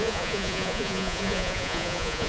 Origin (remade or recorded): remade